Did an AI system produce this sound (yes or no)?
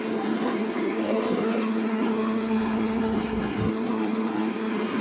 yes